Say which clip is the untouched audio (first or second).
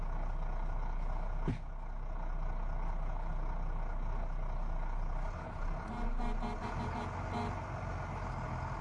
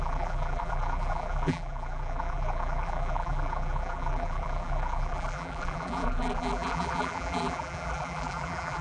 first